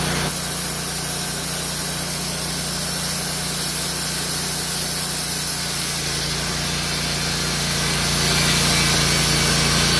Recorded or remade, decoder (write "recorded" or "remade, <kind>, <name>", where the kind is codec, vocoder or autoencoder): recorded